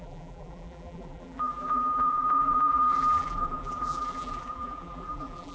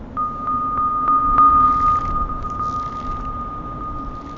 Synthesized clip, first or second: first